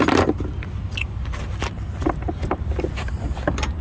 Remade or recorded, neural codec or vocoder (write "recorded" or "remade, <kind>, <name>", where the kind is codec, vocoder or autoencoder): recorded